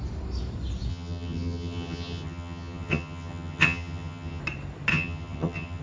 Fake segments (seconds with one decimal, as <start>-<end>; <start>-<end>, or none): 0.9-4.4; 4.9-5.8